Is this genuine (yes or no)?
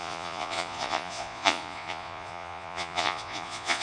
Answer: no